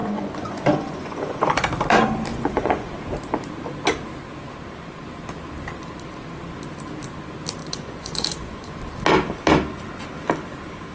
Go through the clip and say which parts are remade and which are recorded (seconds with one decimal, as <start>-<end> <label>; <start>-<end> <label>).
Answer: 0.0-1.4 remade; 1.4-2.3 recorded; 2.3-2.9 remade; 2.9-7.6 recorded; 7.6-8.8 remade; 8.8-10.9 recorded